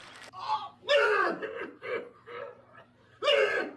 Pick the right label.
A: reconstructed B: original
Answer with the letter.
A